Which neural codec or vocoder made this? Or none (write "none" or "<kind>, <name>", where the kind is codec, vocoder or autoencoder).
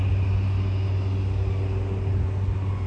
none